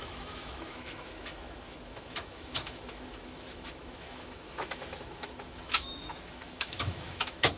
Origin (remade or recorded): remade